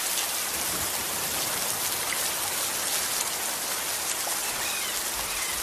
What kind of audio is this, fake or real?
real